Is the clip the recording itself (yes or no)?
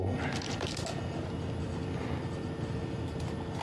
yes